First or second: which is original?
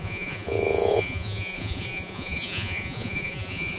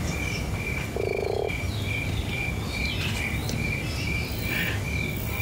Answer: second